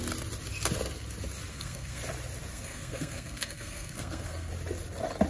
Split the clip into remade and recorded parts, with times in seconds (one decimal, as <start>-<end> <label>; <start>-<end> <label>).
0.0-1.5 recorded; 1.5-2.0 remade; 2.0-2.5 recorded; 2.5-4.5 remade; 4.5-5.3 recorded